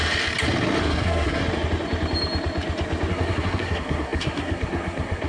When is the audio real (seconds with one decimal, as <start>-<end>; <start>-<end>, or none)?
0.0-0.8; 1.4-3.1